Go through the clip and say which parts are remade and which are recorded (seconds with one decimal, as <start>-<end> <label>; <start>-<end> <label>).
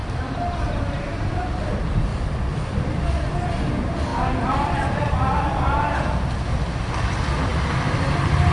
0.0-1.2 recorded; 1.2-8.5 remade